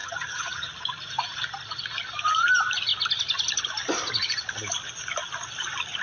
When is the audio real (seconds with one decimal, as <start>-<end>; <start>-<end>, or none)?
0.7-6.0